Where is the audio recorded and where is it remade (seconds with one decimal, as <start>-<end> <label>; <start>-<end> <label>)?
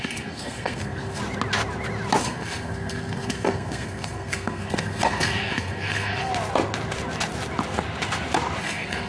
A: 0.0-1.2 remade; 1.2-2.2 recorded; 2.2-6.3 remade; 6.3-8.6 recorded; 8.6-9.1 remade